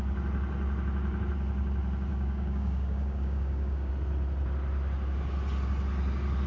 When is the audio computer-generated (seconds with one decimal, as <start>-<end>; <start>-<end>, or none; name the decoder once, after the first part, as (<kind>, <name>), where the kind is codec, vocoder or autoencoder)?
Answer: 2.1-3.9 (codec, DAC)